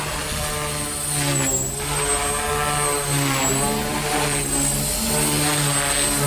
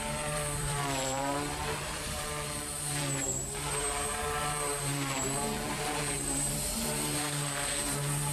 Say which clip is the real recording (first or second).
first